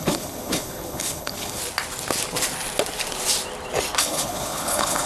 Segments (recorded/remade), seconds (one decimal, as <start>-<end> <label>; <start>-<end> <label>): 0.0-1.6 remade; 1.6-4.0 recorded; 4.0-5.1 remade